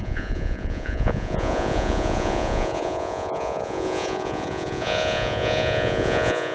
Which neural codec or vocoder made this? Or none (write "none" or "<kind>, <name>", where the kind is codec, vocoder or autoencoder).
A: vocoder, Vocos